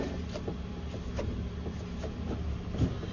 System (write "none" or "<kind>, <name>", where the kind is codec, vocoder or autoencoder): none